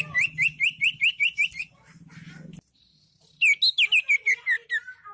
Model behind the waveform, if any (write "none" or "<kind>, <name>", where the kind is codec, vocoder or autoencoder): none